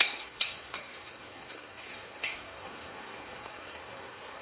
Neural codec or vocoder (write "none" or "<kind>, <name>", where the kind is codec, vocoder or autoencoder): codec, SNAC